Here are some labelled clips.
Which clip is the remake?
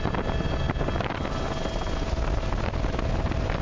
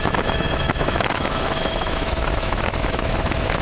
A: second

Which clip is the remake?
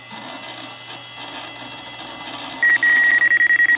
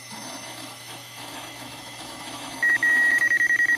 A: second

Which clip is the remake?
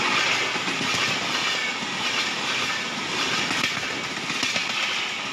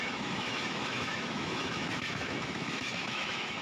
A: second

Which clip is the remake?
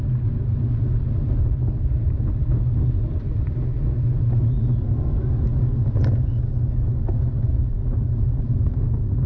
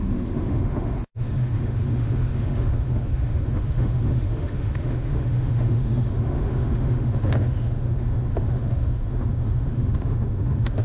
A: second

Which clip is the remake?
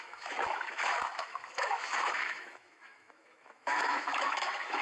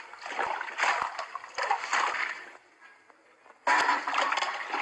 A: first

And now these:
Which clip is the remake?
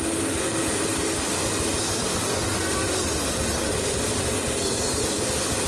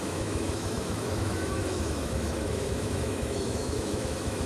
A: second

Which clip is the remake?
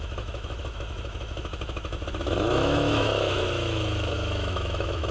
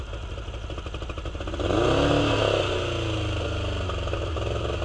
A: first